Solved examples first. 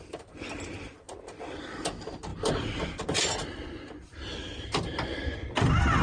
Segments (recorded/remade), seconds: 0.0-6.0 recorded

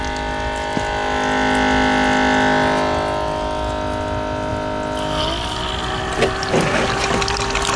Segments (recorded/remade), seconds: 0.0-7.8 recorded

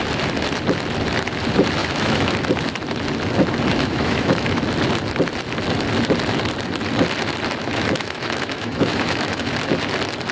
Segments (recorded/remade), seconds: 0.0-1.8 recorded; 1.8-2.5 remade; 2.5-3.7 recorded; 3.7-4.6 remade; 4.6-7.6 recorded; 7.6-9.5 remade; 9.5-10.3 recorded